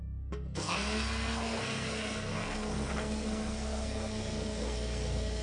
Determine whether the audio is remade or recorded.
remade